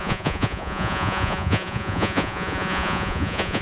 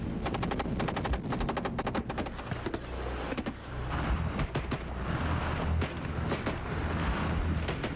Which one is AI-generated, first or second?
first